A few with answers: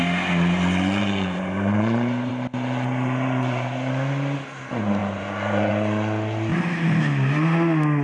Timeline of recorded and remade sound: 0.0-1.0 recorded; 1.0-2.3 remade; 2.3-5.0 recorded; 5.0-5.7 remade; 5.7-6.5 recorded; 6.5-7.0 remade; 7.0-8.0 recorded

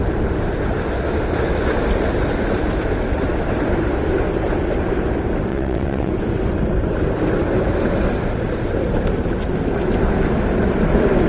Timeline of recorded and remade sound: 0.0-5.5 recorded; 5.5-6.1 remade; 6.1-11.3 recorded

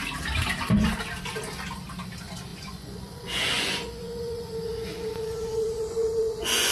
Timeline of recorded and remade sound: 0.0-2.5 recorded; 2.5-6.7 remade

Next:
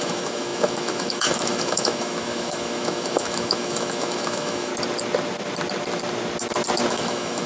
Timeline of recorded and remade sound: 0.0-4.7 remade; 4.7-6.9 recorded; 6.9-7.5 remade